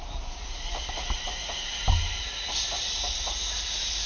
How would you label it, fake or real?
real